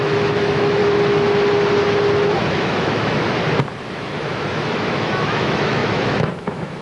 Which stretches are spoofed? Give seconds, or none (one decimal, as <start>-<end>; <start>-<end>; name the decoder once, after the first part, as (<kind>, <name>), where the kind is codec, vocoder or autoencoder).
0.0-0.8 (autoencoder, DAC-VAE); 2.5-3.4; 3.9-6.8